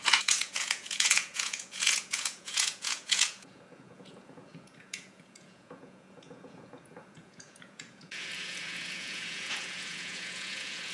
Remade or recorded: remade